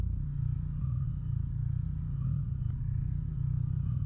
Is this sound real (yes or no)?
yes